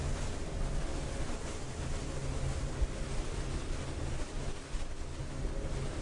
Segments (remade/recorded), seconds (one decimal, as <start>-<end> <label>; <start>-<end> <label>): 0.0-5.2 recorded; 5.2-6.0 remade